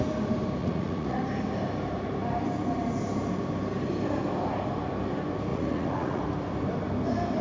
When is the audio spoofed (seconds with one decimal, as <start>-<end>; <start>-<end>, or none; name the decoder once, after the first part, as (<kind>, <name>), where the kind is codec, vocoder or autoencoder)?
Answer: 0.6-1.2 (vocoder, Vocos); 5.5-6.2